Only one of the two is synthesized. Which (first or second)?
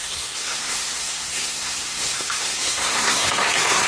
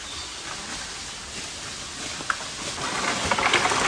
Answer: first